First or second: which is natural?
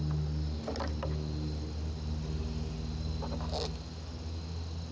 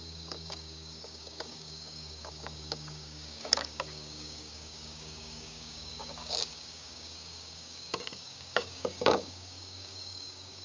first